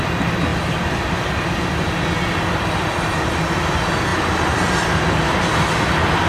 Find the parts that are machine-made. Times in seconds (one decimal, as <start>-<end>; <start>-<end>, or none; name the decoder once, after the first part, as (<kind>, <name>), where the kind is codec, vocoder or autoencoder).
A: none